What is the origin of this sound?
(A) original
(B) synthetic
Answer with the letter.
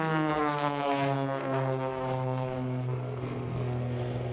B